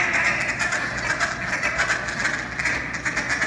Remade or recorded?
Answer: recorded